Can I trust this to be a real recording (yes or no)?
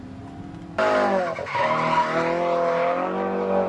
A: yes